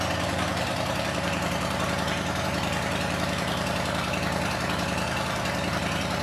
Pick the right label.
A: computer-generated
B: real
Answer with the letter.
A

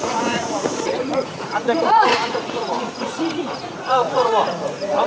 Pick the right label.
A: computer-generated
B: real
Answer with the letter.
A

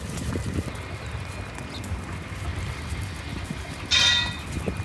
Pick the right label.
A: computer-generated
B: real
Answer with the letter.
B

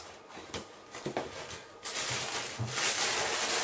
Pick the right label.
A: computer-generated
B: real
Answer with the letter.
B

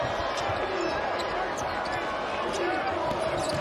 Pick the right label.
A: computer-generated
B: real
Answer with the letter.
B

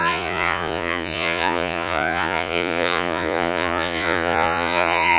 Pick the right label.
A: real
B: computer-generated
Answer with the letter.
B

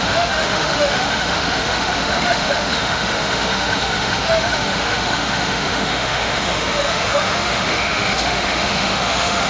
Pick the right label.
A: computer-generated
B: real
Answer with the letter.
A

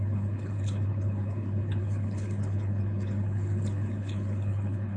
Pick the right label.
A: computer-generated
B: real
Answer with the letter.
A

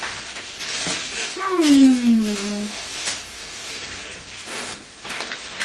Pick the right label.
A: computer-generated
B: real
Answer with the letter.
A